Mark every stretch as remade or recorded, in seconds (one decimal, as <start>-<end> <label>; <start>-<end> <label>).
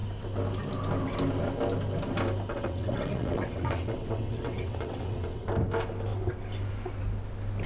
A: 0.0-2.5 recorded; 2.5-5.5 remade; 5.5-7.7 recorded